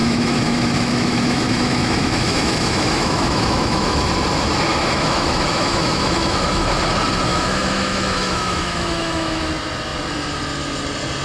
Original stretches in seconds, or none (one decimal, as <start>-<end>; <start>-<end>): 4.1-4.7; 6.7-7.3; 9.5-11.2